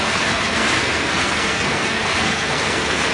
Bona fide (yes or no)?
no